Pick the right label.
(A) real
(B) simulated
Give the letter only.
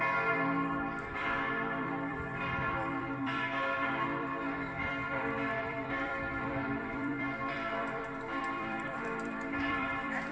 B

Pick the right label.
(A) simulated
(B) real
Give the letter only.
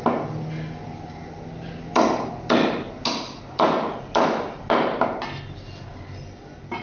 B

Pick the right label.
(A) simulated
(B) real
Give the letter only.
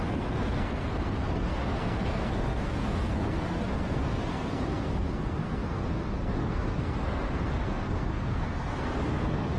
A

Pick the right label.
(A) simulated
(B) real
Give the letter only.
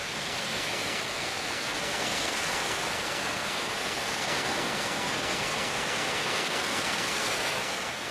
A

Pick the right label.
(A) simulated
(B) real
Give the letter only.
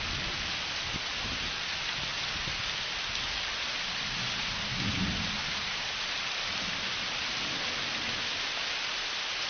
A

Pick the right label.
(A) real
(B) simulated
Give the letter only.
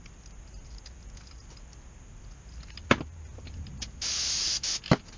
A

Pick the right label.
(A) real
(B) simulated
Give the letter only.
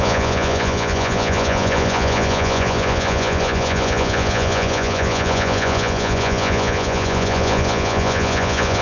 B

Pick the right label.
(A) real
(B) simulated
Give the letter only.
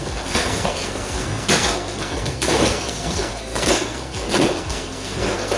B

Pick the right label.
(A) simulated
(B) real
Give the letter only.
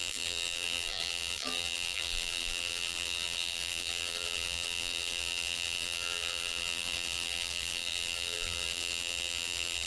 A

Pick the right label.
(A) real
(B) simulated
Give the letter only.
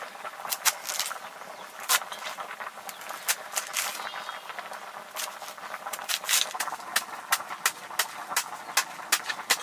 A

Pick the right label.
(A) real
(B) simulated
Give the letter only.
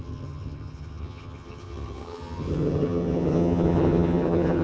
B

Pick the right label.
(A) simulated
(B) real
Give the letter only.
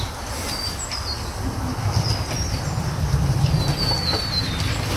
B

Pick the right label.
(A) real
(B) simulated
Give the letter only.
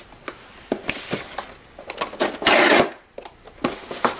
A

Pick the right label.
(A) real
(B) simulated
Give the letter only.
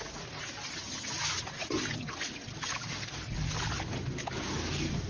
A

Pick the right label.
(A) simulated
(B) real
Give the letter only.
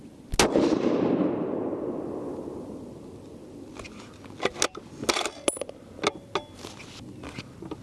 B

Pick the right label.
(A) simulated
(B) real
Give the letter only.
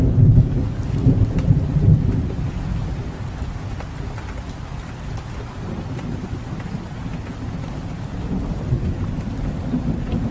B